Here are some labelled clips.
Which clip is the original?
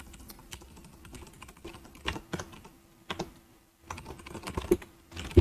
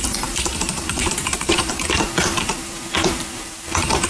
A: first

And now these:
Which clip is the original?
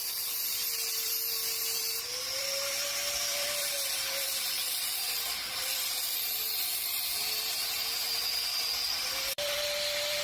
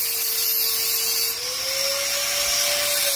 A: second